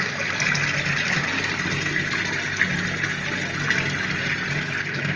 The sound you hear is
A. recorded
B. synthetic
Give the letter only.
A